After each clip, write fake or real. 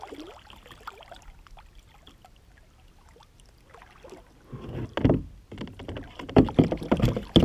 real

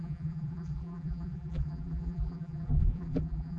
fake